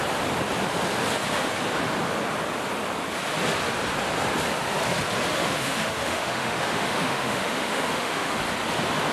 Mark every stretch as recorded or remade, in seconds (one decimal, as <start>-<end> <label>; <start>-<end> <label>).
0.0-5.3 recorded; 5.3-8.4 remade; 8.4-9.1 recorded